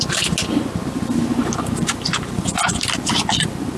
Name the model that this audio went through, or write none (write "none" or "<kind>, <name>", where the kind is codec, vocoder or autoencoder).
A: none